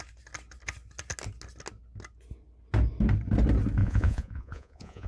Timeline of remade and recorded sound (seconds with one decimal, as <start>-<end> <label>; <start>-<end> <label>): 0.0-3.8 recorded; 3.8-5.1 remade